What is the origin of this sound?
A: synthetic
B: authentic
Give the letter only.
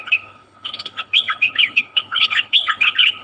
A